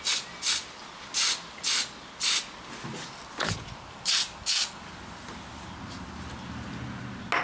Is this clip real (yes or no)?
yes